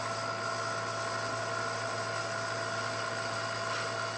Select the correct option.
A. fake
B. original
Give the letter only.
B